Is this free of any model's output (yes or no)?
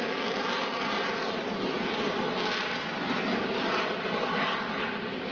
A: yes